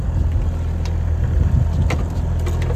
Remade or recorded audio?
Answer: recorded